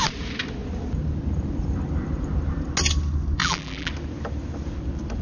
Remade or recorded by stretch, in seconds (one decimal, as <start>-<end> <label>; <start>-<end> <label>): 0.0-3.4 recorded; 3.4-3.9 remade; 3.9-5.2 recorded